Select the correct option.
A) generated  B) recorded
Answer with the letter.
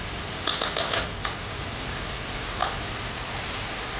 B